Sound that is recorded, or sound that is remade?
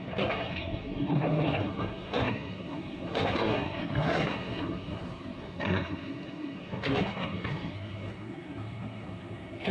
remade